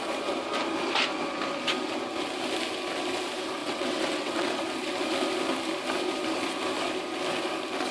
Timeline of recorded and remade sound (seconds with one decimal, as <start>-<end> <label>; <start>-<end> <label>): 0.0-3.6 recorded; 3.6-4.6 remade; 4.6-7.9 recorded